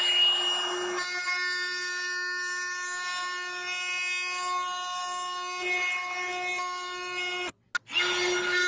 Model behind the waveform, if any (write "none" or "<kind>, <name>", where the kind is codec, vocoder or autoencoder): none